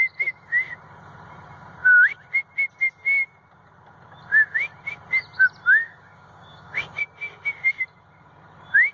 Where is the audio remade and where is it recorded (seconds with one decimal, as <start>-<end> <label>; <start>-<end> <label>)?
0.0-5.9 recorded; 5.9-7.0 remade; 7.0-8.9 recorded